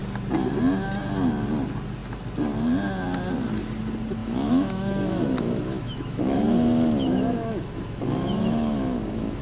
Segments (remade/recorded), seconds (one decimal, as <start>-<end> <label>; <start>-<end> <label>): 0.0-4.2 recorded; 4.2-9.4 remade